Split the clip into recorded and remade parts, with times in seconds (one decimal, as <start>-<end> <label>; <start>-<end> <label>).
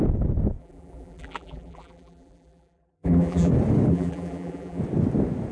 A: 0.0-0.6 recorded; 0.6-3.5 remade; 3.5-3.9 recorded; 3.9-4.8 remade; 4.8-5.5 recorded